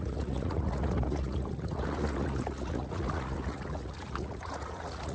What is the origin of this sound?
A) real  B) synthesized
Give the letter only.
B